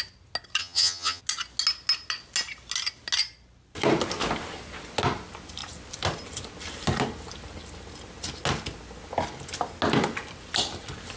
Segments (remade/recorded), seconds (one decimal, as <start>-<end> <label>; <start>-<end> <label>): 0.0-0.6 recorded; 0.6-1.2 remade; 1.2-11.2 recorded